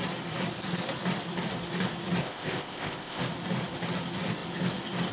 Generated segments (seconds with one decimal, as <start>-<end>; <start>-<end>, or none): 2.2-3.2

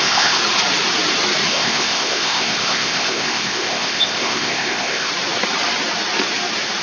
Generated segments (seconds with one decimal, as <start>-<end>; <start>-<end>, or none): 0.0-0.4; 1.5-5.1

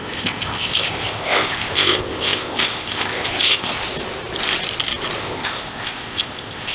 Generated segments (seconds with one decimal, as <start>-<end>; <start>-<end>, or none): 0.0-3.7; 5.2-6.7

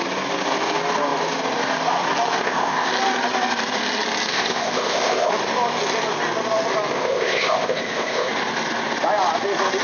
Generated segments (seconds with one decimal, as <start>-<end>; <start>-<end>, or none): 2.4-2.9; 4.3-5.3; 6.9-8.3